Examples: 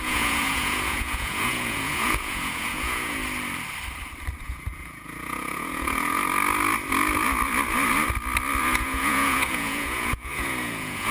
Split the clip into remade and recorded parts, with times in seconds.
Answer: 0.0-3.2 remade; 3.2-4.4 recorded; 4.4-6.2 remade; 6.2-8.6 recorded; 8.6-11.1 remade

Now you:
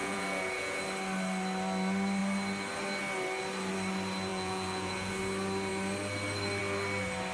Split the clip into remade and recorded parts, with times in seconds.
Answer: 0.0-0.8 remade; 0.8-4.3 recorded; 4.3-5.1 remade; 5.1-7.3 recorded

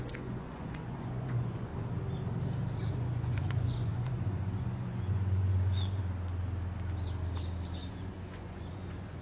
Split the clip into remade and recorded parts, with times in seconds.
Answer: 0.0-1.7 remade; 1.7-2.9 recorded; 2.9-6.0 remade; 6.0-7.9 recorded; 7.9-9.2 remade

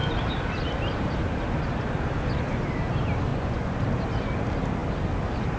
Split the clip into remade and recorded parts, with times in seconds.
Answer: 0.0-3.3 recorded; 3.3-3.9 remade; 3.9-5.6 recorded

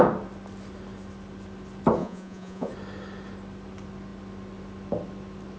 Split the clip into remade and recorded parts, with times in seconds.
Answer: 0.0-2.0 recorded; 2.0-2.7 remade; 2.7-5.6 recorded

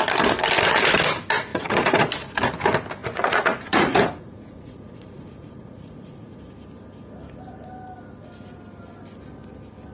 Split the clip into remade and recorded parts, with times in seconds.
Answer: 0.0-1.5 recorded; 1.5-2.1 remade; 2.1-3.0 recorded; 3.0-6.5 remade; 6.5-9.9 recorded

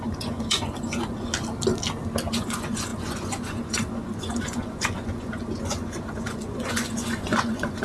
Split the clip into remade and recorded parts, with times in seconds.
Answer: 0.0-1.3 remade; 1.3-2.3 recorded; 2.3-7.8 remade

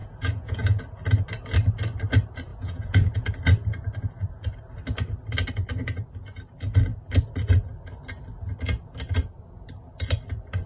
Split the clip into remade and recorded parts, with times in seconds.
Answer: 0.0-0.8 remade; 0.8-2.5 recorded; 2.5-3.3 remade; 3.3-10.7 recorded